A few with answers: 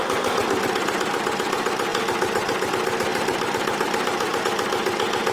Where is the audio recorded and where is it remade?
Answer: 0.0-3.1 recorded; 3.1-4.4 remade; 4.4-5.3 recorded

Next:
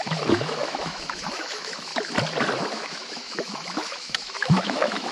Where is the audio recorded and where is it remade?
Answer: 0.0-1.9 remade; 1.9-2.7 recorded; 2.7-5.1 remade

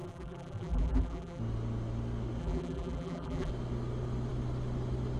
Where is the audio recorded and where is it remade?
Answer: 0.0-1.4 remade; 1.4-2.4 recorded; 2.4-3.5 remade; 3.5-5.2 recorded

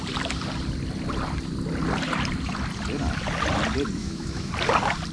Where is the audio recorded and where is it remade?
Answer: 0.0-4.0 recorded; 4.0-4.5 remade; 4.5-5.1 recorded

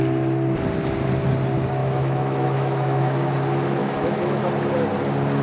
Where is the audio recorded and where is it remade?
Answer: 0.0-1.8 recorded; 1.8-3.3 remade; 3.3-3.8 recorded; 3.8-4.4 remade; 4.4-5.4 recorded

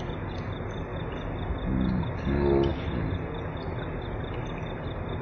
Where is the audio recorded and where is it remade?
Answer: 0.0-5.2 recorded